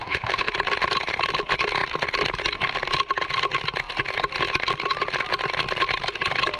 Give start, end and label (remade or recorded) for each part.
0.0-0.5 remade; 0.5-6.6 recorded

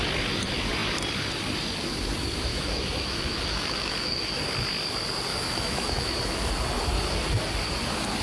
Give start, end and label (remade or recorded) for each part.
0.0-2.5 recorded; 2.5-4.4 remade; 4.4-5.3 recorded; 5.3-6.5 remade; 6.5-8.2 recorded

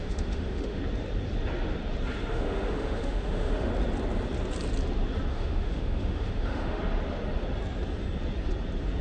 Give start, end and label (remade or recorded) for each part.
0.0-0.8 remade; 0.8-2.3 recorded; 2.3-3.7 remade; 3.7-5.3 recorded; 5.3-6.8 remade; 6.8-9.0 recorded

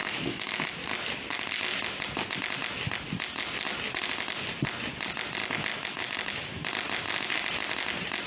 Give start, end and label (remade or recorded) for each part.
0.0-0.6 remade; 0.6-5.7 recorded; 5.7-6.6 remade; 6.6-8.3 recorded

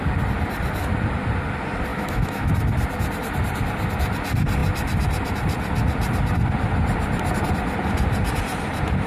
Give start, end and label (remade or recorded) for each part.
0.0-1.9 recorded; 1.9-2.5 remade; 2.5-9.1 recorded

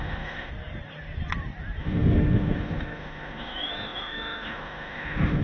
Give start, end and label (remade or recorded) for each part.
0.0-0.5 remade; 0.5-1.8 recorded; 1.8-5.4 remade